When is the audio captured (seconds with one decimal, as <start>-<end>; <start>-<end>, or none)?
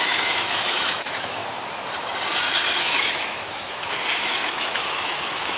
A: 1.4-2.8